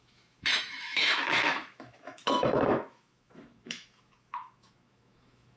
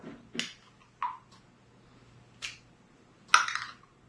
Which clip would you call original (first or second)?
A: second